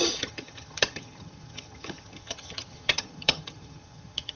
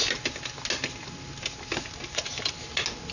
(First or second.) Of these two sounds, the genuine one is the second